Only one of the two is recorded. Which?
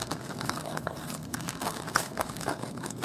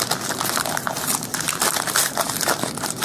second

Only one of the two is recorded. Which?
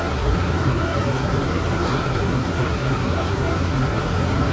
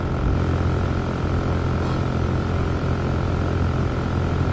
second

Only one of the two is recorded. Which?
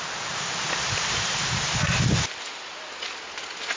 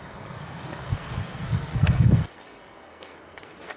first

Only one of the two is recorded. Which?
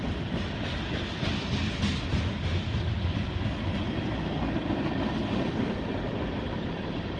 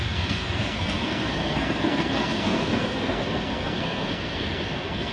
first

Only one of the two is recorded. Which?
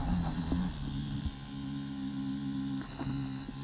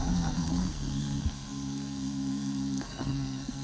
first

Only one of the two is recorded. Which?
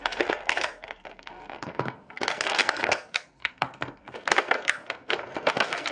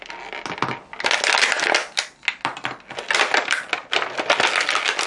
second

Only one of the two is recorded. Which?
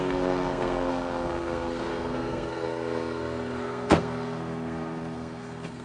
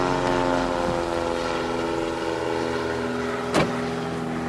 second